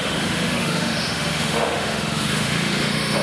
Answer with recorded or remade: remade